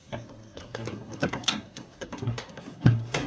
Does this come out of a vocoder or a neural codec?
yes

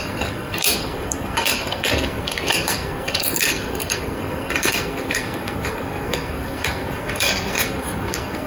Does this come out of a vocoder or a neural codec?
yes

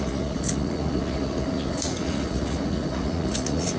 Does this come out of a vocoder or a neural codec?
yes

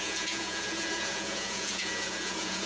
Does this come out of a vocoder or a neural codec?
yes